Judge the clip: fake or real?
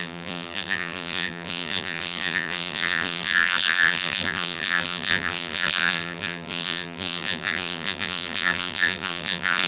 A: fake